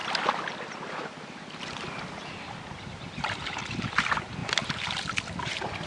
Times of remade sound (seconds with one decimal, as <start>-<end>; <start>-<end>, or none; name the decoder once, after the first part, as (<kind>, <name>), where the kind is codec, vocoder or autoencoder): 2.9-4.4 (vocoder, BigVGAN v2); 5.4-5.9